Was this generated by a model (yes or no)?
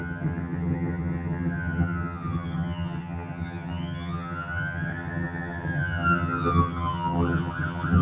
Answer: yes